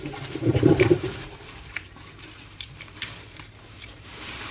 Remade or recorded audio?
remade